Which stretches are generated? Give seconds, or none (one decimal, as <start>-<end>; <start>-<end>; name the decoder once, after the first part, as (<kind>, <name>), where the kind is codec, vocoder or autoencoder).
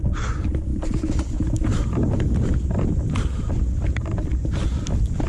none